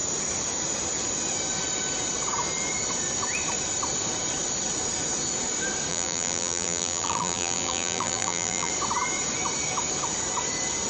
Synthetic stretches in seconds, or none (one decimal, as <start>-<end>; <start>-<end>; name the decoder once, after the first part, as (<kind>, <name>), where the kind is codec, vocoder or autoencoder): 5.9-8.7 (vocoder, BigVGAN v2)